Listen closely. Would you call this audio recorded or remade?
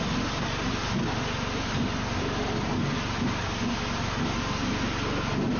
recorded